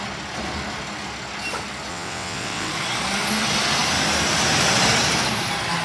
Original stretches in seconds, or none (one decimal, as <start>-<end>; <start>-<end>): 0.0-1.9; 2.7-5.8

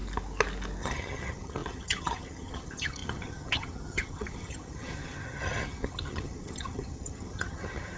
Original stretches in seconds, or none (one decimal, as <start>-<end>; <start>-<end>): 0.0-0.8

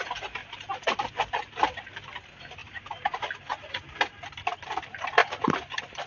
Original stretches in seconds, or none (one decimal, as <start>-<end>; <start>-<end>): 0.0-0.4; 1.1-2.6; 3.3-6.1

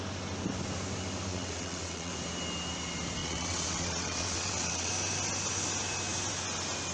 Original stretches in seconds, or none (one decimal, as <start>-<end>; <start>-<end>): 0.0-1.3; 2.1-3.2; 4.9-6.9

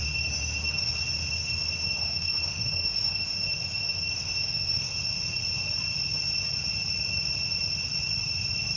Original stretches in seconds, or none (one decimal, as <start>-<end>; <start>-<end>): 0.9-1.4; 4.9-8.8